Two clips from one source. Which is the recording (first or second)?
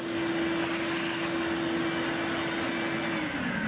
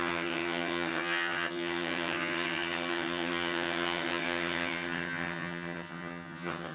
first